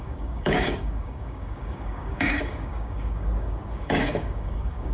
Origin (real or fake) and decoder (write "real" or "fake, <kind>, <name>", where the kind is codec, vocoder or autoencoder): fake, codec, DAC